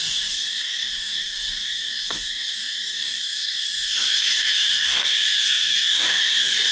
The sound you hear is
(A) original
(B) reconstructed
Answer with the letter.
B